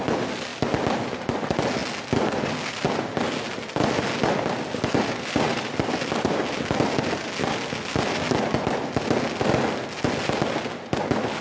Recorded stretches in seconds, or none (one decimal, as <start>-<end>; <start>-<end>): 0.0-11.4